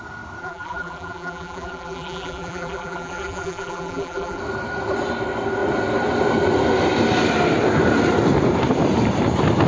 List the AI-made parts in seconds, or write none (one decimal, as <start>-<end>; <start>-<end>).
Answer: 0.4-4.4